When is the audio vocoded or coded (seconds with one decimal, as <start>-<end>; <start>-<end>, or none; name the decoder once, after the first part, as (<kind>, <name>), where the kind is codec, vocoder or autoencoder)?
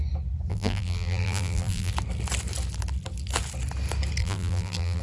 0.5-1.9 (vocoder, BigVGAN v2); 4.2-5.0